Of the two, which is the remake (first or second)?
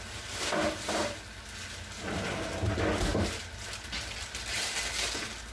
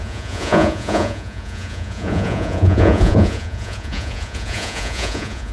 second